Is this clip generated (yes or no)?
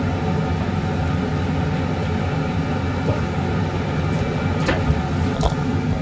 no